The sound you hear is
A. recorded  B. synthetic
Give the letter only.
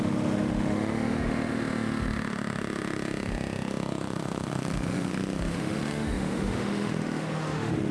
B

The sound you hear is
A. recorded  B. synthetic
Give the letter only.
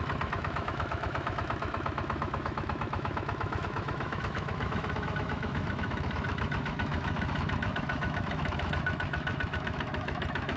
B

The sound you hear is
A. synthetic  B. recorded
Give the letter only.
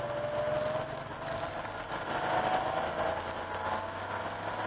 B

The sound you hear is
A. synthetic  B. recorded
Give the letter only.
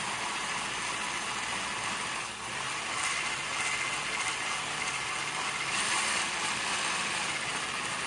B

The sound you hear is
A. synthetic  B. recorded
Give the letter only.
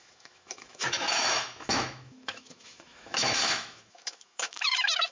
A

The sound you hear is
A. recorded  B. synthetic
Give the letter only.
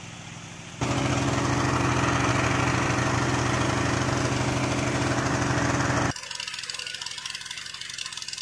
A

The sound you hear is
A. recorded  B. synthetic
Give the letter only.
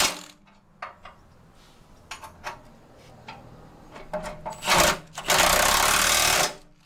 A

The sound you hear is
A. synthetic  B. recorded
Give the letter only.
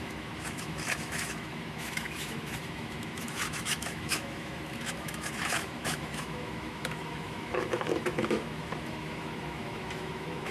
A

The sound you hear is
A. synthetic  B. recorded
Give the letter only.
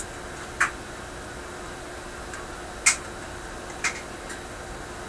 B